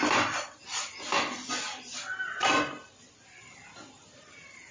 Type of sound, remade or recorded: recorded